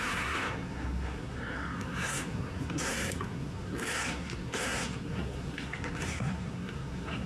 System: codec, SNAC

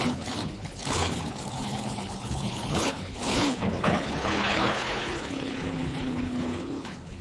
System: codec, HILCodec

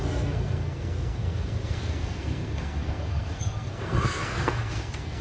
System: codec, SNAC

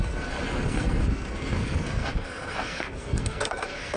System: codec, SNAC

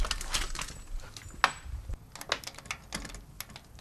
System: none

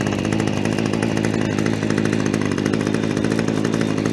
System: none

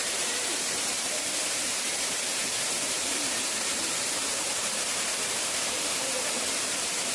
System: vocoder, BigVGAN v2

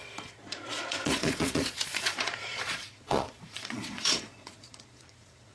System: vocoder, Vocos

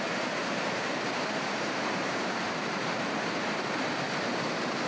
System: vocoder, BigVGAN v2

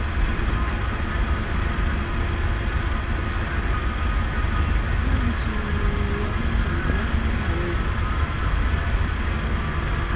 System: none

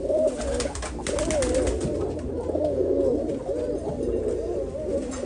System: none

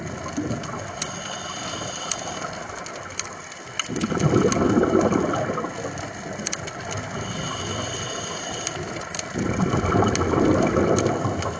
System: none